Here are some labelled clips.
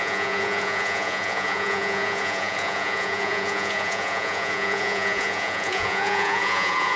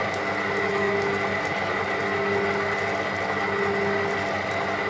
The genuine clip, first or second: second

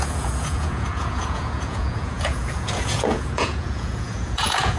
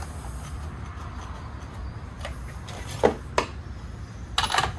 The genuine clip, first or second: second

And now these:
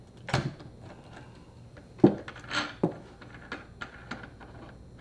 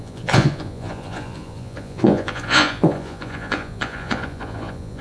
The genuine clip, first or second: first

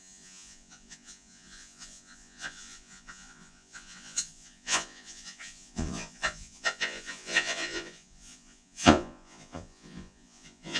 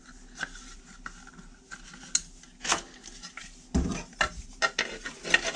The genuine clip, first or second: second